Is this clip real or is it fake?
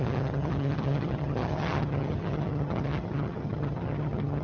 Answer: fake